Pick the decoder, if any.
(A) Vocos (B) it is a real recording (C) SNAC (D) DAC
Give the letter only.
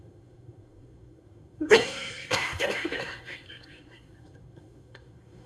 C